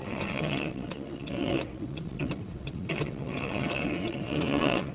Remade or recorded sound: remade